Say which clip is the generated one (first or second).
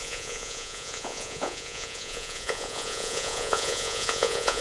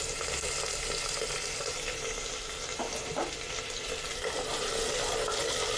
first